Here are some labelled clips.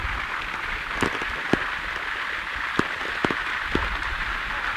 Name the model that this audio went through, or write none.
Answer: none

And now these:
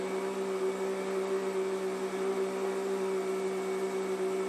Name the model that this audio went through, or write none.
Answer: none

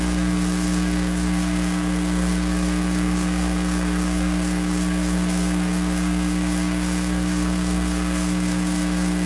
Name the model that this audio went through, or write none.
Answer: codec, SNAC